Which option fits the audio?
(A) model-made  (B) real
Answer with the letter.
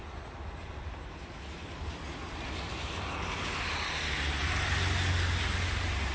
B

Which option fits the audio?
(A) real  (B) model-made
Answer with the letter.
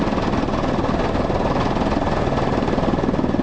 A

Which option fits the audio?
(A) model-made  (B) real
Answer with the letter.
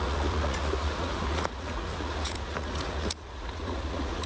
A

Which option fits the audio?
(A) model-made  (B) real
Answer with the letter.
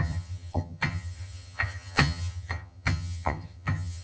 A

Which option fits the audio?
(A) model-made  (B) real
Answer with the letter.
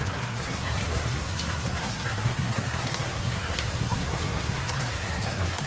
A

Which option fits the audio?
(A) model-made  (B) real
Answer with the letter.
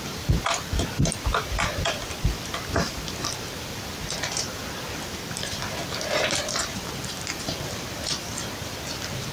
A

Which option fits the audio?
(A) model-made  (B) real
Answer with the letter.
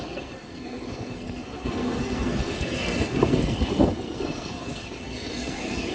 A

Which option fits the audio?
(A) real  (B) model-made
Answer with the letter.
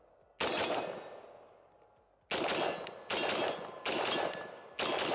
A